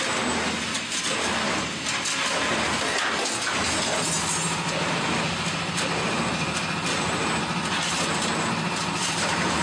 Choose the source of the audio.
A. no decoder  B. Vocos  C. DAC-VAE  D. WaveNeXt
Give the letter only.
A